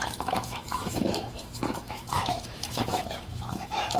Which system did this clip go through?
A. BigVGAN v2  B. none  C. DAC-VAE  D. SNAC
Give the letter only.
C